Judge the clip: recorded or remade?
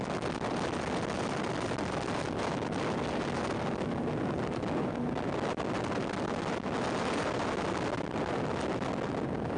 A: recorded